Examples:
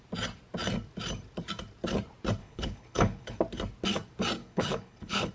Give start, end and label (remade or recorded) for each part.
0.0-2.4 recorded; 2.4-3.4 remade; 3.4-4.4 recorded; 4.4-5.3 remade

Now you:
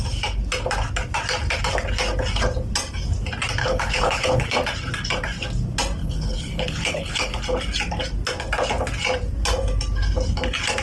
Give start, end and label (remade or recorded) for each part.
0.0-3.6 recorded; 3.6-4.5 remade; 4.5-6.0 recorded; 6.0-7.4 remade; 7.4-10.8 recorded

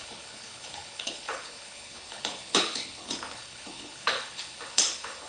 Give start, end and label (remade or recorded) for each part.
0.0-5.3 remade

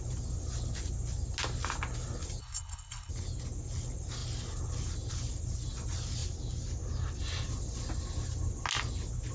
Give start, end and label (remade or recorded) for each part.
0.0-2.4 recorded; 2.4-3.1 remade; 3.1-9.3 recorded

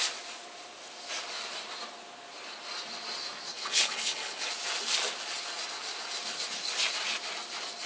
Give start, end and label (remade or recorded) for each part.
0.0-3.5 recorded; 3.5-4.5 remade; 4.5-7.9 recorded

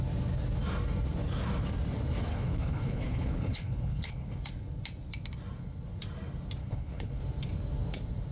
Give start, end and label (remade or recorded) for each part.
0.0-2.3 recorded; 2.3-4.4 remade; 4.4-6.6 recorded; 6.6-7.2 remade; 7.2-8.3 recorded

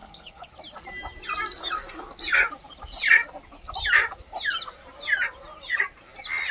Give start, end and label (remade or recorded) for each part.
0.0-0.5 remade; 0.5-6.5 recorded